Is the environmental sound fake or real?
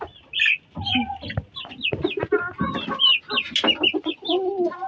real